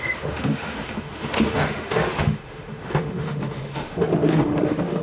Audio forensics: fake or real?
fake